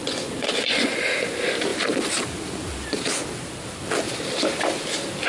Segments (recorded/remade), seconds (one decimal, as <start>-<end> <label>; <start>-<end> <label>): 0.0-1.0 remade; 1.0-5.3 recorded